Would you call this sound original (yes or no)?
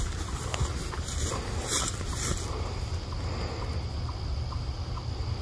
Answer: yes